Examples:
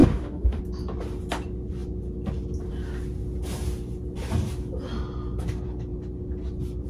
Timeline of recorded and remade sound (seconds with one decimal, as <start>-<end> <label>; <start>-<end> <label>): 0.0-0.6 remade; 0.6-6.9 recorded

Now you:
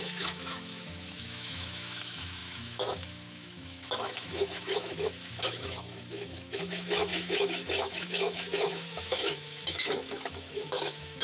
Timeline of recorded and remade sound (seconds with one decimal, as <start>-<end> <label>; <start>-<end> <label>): 0.0-11.2 remade

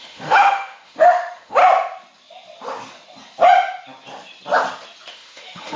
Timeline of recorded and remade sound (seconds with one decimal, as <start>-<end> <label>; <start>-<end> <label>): 0.0-1.6 remade; 1.6-5.1 recorded; 5.1-5.8 remade

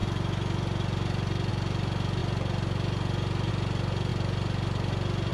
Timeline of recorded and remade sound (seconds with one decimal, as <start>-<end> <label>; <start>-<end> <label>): 0.0-5.3 recorded

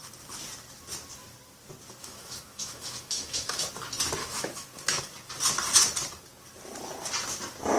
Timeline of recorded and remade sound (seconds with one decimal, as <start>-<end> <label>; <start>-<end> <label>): 0.0-2.0 recorded; 2.0-3.7 remade; 3.7-4.2 recorded; 4.2-5.0 remade; 5.0-7.8 recorded